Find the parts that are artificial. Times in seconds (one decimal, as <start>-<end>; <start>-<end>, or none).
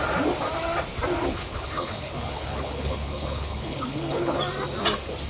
1.2-4.4